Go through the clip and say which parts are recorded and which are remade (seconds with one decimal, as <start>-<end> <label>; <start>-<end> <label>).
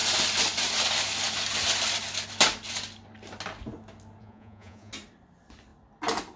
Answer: 0.0-4.2 recorded; 4.2-4.9 remade; 4.9-6.4 recorded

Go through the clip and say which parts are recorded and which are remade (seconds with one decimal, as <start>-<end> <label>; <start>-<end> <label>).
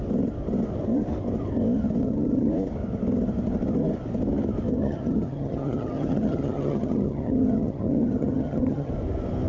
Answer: 0.0-2.0 recorded; 2.0-2.5 remade; 2.5-4.7 recorded; 4.7-8.9 remade; 8.9-9.5 recorded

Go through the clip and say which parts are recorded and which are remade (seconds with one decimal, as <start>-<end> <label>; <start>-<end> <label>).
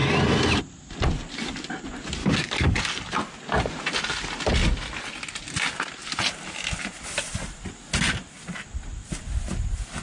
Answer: 0.0-2.2 recorded; 2.2-2.9 remade; 2.9-10.0 recorded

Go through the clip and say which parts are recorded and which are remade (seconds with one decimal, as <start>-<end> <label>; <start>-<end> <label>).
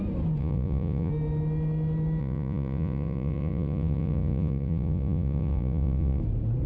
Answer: 0.0-0.4 recorded; 0.4-1.1 remade; 1.1-2.2 recorded; 2.2-6.2 remade; 6.2-6.7 recorded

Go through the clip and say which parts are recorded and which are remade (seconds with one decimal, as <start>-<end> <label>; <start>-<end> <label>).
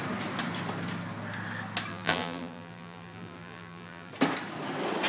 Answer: 0.0-1.9 recorded; 1.9-4.1 remade; 4.1-5.1 recorded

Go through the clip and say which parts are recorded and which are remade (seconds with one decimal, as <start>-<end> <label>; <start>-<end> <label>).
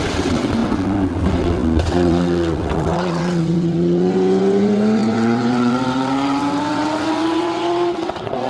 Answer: 0.0-8.5 remade